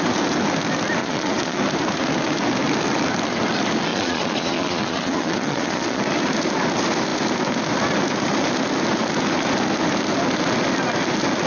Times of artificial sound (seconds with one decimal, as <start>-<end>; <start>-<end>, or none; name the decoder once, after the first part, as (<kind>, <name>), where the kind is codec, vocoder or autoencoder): 1.0-1.6 (vocoder, Vocos); 3.9-6.0